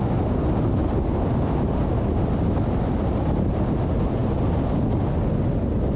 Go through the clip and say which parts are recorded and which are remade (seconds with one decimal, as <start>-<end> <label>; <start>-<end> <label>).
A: 0.0-6.0 recorded

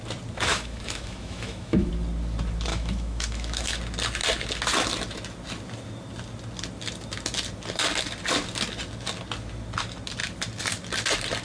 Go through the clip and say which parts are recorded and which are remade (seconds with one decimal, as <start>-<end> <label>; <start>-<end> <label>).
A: 0.0-0.5 recorded; 0.5-1.9 remade; 1.9-2.7 recorded; 2.7-3.8 remade; 3.8-11.4 recorded

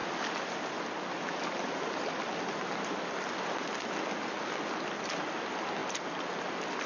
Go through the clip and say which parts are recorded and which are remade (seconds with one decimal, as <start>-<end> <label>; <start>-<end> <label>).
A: 0.0-6.9 recorded

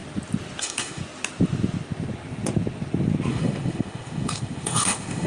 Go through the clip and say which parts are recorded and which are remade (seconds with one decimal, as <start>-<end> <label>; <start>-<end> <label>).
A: 0.0-0.6 recorded; 0.6-1.0 remade; 1.0-3.3 recorded; 3.3-5.3 remade

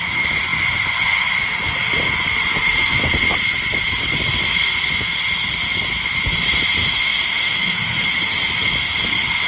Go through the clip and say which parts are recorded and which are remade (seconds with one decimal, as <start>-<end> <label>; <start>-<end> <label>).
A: 0.0-2.5 recorded; 2.5-3.2 remade; 3.2-6.8 recorded; 6.8-8.0 remade; 8.0-9.5 recorded

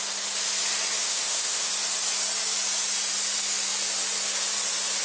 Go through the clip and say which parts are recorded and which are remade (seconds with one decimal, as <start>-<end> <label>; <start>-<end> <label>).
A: 0.0-1.0 recorded; 1.0-1.7 remade; 1.7-5.0 recorded

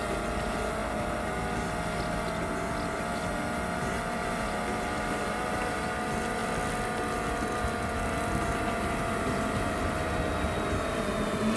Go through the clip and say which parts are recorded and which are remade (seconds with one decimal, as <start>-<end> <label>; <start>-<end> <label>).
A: 0.0-11.6 recorded

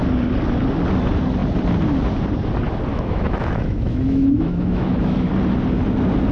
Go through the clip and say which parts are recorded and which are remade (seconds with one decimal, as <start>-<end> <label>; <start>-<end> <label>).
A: 0.0-2.9 recorded; 2.9-5.3 remade; 5.3-6.3 recorded